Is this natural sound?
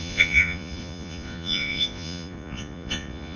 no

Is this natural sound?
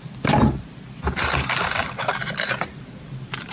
yes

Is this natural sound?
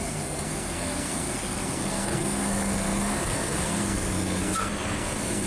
no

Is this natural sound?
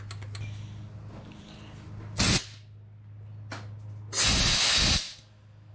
yes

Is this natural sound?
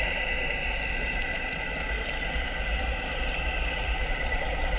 no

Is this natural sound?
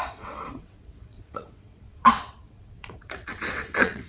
no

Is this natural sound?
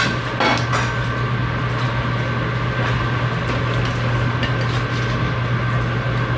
yes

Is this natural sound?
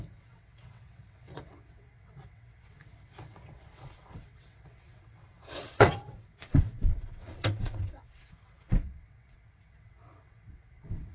no